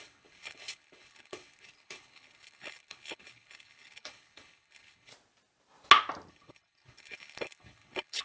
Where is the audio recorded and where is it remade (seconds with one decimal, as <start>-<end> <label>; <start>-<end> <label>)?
0.0-5.1 remade; 5.1-6.3 recorded; 6.3-8.2 remade